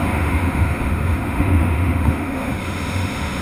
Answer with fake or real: fake